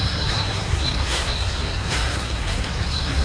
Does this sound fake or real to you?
fake